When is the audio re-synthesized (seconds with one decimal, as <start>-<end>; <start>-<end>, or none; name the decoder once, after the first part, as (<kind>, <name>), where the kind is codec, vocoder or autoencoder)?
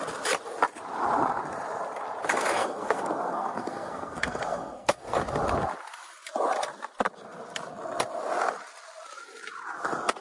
2.3-5.2 (codec, SNAC)